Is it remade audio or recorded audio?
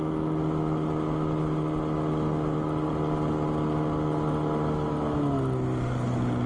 recorded